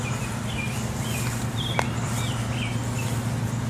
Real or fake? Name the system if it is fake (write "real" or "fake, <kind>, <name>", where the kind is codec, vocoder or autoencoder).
real